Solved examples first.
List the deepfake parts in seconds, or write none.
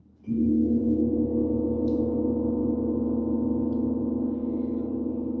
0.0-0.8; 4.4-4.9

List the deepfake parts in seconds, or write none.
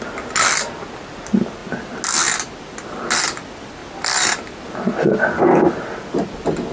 none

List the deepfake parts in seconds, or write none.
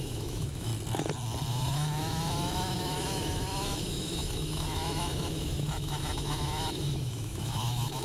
0.0-0.7; 1.5-8.0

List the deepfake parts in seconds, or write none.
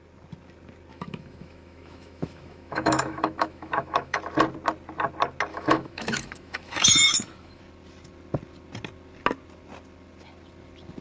0.9-4.2; 5.5-7.6